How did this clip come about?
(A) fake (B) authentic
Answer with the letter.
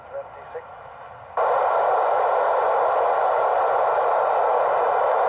B